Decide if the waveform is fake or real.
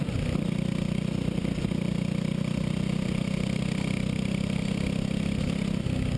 real